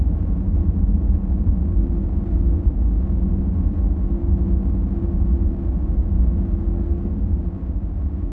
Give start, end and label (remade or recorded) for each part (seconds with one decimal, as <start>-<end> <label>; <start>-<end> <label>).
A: 0.0-6.6 recorded; 6.6-7.1 remade; 7.1-8.3 recorded